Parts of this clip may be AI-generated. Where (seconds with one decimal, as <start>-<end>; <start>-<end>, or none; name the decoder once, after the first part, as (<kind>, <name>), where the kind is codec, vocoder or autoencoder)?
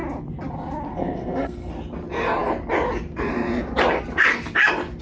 0.9-1.7 (codec, SNAC)